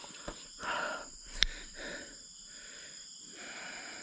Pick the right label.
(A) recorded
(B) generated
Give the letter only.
B